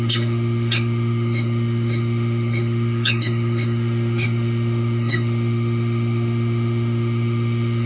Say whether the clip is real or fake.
fake